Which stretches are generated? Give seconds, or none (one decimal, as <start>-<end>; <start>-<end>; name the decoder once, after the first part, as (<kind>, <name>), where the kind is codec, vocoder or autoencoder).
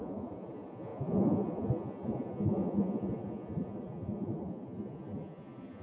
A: 0.0-5.8 (vocoder, Vocos)